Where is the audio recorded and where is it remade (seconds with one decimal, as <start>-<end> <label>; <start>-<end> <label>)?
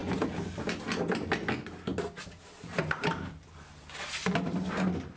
0.0-5.2 recorded